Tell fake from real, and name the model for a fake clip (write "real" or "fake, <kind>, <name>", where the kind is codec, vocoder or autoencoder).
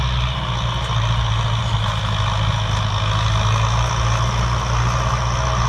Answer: real